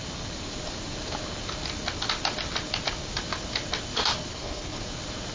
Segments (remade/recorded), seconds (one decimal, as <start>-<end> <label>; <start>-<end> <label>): 0.0-4.3 recorded; 4.3-4.8 remade; 4.8-5.3 recorded